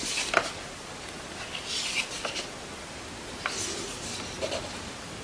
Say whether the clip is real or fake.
real